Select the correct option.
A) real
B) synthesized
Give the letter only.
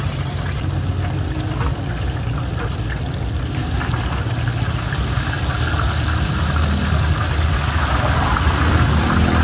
A